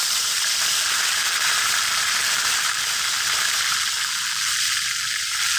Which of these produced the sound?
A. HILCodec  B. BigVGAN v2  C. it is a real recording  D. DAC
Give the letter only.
B